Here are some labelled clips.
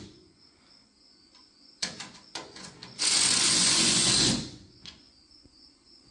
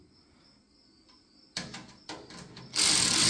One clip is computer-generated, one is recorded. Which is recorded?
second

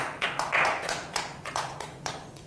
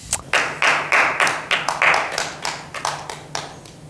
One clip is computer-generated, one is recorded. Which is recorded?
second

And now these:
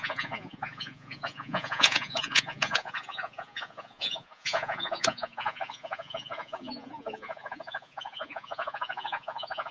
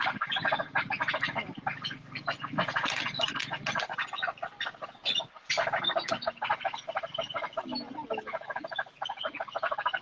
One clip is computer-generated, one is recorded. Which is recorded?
second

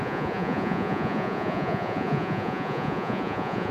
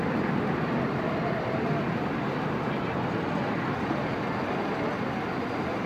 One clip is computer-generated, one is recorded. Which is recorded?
second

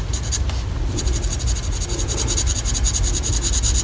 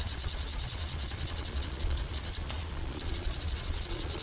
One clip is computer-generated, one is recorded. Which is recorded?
first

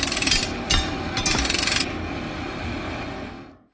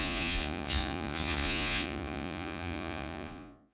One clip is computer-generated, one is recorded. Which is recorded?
first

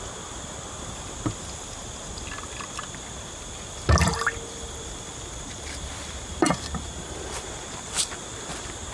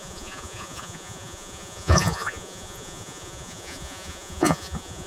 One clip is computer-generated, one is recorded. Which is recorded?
first